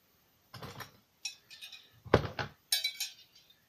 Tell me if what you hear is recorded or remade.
recorded